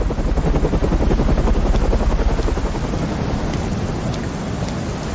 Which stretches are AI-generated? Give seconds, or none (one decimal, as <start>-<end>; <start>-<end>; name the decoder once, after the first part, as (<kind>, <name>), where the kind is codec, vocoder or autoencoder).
none